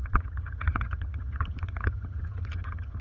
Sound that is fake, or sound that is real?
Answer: fake